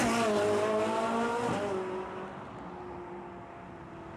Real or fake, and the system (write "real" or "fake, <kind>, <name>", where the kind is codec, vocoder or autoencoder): real